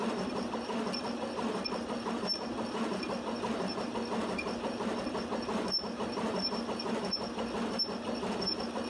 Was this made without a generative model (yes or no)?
yes